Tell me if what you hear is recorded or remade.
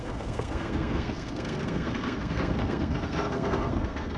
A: remade